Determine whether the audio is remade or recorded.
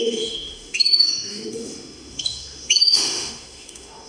remade